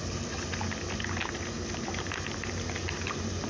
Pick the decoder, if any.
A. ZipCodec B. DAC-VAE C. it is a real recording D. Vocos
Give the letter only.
C